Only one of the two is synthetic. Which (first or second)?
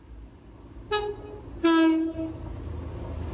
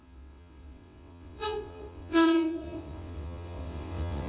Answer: second